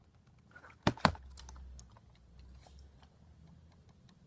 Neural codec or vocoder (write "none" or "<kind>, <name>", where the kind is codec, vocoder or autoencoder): none